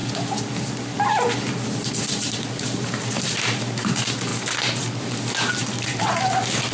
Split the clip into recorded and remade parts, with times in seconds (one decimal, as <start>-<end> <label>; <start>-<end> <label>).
0.0-4.3 remade; 4.3-6.0 recorded; 6.0-6.7 remade

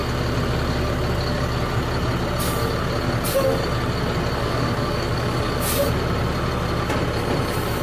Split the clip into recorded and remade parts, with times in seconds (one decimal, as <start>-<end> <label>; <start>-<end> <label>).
0.0-4.4 recorded; 4.4-5.5 remade; 5.5-7.8 recorded